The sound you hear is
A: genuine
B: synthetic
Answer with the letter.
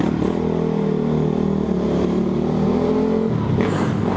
A